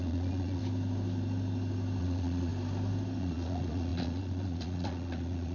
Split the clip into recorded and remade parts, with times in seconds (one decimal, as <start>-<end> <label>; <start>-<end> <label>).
0.0-0.6 remade; 0.6-2.0 recorded; 2.0-2.5 remade; 2.5-3.2 recorded; 3.2-5.5 remade